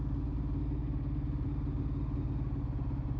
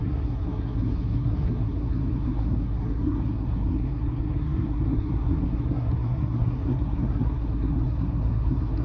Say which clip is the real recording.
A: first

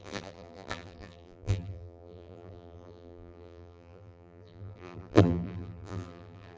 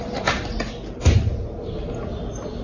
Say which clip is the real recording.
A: second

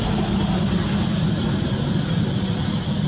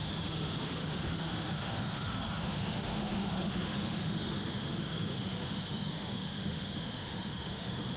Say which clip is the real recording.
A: first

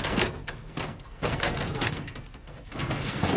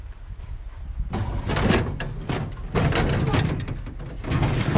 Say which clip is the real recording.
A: second